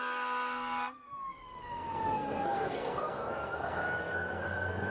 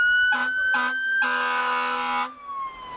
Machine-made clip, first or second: first